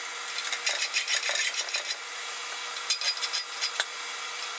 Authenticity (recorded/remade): recorded